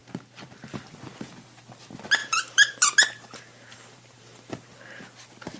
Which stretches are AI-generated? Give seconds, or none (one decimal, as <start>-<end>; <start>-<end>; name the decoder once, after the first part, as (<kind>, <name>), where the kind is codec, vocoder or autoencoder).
0.0-0.8 (vocoder, BigVGAN v2); 2.2-4.7